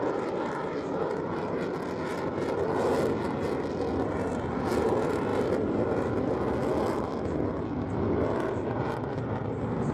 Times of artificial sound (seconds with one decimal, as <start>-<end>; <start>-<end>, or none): none